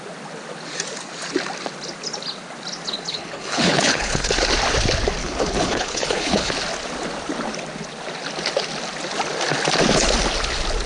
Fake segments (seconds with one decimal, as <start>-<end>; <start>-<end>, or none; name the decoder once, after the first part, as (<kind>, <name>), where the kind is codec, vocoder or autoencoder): 3.1-4.3 (codec, HILCodec); 5.2-6.5